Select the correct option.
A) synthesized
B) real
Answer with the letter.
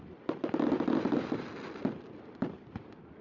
A